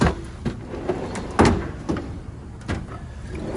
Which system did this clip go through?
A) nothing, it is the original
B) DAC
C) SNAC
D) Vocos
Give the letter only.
A